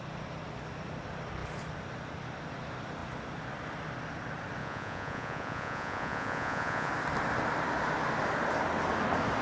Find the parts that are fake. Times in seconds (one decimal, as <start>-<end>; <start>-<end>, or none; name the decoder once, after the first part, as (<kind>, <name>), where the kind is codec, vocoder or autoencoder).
4.6-6.9 (vocoder, Vocos)